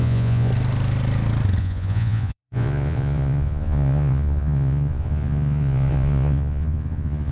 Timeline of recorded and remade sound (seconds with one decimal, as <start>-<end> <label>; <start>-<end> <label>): 0.0-0.5 remade; 0.5-1.6 recorded; 1.6-7.3 remade